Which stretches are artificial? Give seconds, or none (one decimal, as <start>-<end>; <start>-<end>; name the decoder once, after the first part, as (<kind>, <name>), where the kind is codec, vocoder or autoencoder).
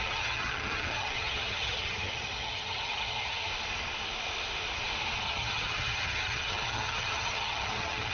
0.0-3.5 (vocoder, HiFi-GAN); 5.2-8.1